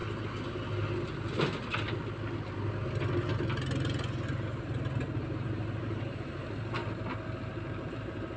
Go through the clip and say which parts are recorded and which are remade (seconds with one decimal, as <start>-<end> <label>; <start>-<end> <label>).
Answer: 0.0-4.6 recorded; 4.6-6.8 remade; 6.8-7.9 recorded; 7.9-8.4 remade